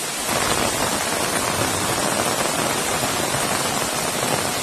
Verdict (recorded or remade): recorded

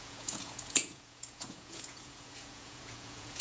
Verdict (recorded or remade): remade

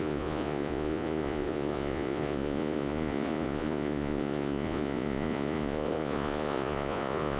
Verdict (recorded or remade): remade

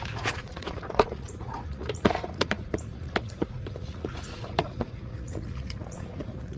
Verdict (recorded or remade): remade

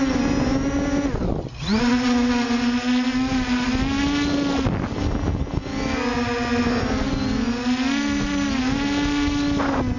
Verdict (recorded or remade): recorded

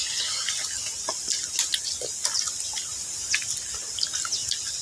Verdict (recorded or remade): recorded